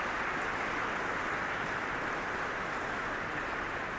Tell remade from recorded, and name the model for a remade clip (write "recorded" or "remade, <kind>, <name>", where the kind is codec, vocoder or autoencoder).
recorded